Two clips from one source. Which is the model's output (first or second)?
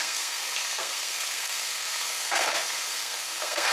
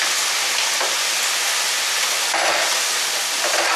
first